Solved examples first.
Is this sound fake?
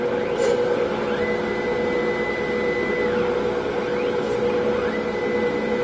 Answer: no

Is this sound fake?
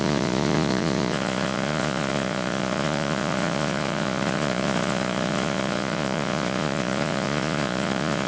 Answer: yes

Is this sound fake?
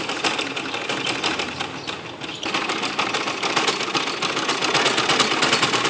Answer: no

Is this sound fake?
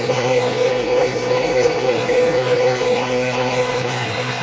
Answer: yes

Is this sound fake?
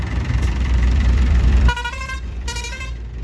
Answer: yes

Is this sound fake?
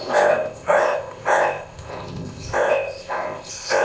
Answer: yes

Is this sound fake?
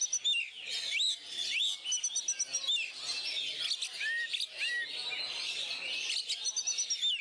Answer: no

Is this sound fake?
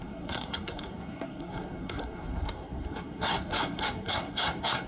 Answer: yes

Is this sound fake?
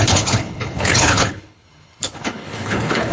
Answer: yes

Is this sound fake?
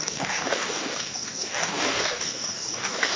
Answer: yes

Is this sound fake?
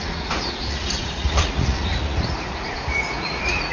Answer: yes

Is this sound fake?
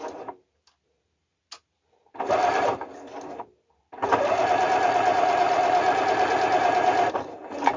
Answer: no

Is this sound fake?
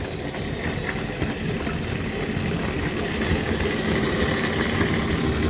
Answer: no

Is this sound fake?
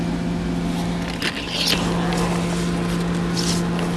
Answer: no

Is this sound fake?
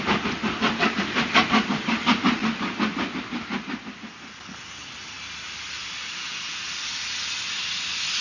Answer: no